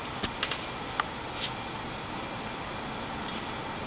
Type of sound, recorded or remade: recorded